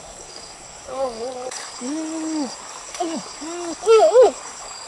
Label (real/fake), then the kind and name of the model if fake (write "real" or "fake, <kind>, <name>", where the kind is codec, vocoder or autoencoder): fake, codec, DAC